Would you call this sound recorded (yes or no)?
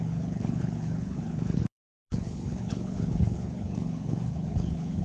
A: no